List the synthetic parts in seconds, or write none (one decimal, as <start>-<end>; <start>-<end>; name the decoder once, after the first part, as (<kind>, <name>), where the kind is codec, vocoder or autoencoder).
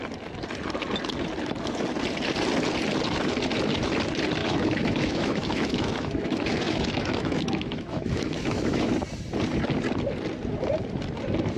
4.4-8.9 (autoencoder, DAC-VAE)